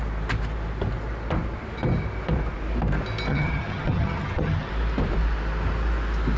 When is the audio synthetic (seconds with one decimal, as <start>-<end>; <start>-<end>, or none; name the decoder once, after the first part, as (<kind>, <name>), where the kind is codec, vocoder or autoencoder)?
3.3-4.7 (vocoder, HiFi-GAN)